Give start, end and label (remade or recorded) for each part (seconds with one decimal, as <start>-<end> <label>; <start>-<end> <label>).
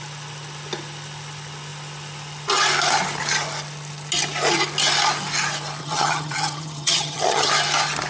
0.0-5.8 recorded; 5.8-7.5 remade; 7.5-8.1 recorded